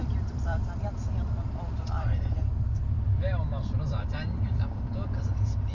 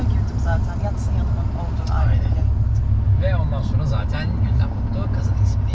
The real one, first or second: second